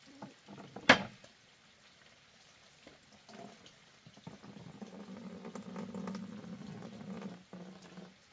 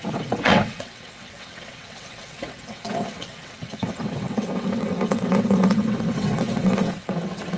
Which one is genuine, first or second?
first